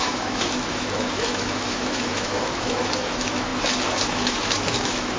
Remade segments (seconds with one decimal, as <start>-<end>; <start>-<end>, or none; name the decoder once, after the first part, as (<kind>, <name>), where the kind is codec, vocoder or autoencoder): 0.0-5.2 (autoencoder, DAC-VAE)